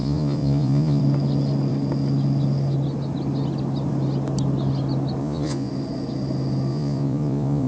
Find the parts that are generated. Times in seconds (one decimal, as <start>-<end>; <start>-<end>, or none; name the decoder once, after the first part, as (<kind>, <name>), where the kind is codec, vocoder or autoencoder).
0.0-1.0 (vocoder, Vocos); 5.2-5.7; 6.7-7.7